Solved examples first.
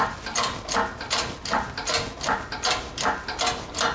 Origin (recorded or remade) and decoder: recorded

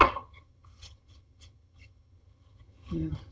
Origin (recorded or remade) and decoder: remade, vocoder, HiFi-GAN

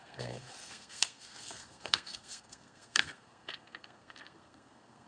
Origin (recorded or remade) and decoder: remade, codec, SNAC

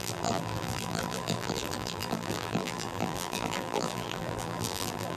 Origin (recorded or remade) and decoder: remade, vocoder, BigVGAN v2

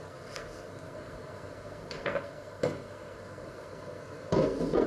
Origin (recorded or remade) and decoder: remade, codec, SNAC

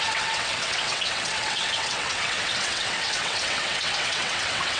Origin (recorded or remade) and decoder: remade, vocoder, WaveNeXt